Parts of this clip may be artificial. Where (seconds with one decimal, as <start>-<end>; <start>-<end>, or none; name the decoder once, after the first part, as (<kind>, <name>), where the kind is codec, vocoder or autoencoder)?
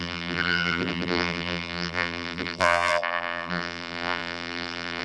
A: 0.0-5.0 (vocoder, BigVGAN v2)